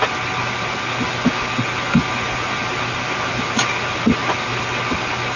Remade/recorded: recorded